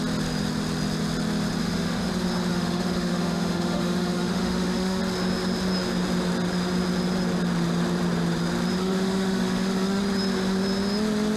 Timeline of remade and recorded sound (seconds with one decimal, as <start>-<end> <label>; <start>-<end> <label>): 0.0-1.6 recorded; 1.6-2.1 remade; 2.1-2.5 recorded; 2.5-5.0 remade; 5.0-8.8 recorded; 8.8-10.0 remade; 10.0-11.4 recorded